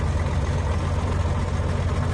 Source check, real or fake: real